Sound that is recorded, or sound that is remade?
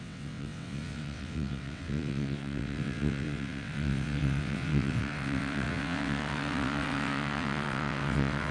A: remade